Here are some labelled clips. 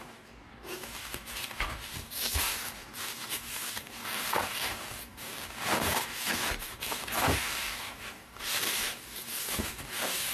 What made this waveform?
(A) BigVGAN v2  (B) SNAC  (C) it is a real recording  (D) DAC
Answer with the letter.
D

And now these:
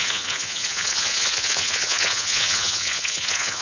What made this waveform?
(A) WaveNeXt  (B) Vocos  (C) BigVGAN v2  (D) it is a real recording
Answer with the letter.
B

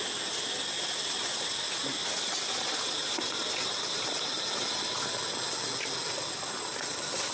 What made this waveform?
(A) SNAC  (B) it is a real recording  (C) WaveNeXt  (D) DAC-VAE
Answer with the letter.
B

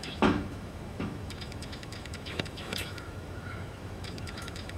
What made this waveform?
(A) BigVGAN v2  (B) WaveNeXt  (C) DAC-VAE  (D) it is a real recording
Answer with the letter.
C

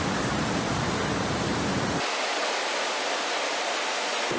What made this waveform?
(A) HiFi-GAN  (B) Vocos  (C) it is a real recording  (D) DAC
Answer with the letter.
C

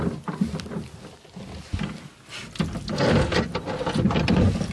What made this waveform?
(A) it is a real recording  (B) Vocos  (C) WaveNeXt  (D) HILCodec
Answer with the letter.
A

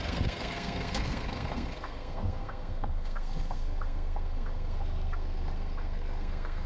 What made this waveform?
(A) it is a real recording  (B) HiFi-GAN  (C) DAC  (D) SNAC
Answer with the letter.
D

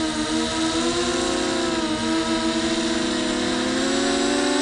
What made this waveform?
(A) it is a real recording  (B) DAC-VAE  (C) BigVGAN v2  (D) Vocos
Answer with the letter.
A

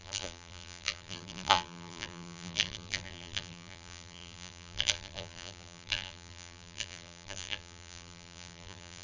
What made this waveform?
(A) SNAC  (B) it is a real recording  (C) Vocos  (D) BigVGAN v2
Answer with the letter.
D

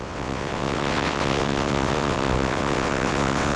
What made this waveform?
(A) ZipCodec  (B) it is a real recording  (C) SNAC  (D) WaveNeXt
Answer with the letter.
D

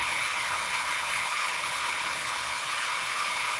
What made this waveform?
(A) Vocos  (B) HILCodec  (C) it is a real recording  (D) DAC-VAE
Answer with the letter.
B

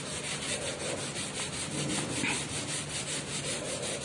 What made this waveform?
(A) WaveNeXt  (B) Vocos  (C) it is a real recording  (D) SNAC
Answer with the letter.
C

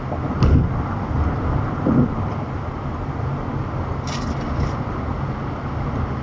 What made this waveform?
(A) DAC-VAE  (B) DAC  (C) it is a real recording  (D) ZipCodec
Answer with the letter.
C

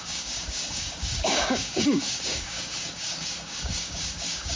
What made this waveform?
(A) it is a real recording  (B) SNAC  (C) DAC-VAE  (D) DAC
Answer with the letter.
D